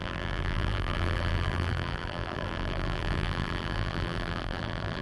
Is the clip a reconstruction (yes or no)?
yes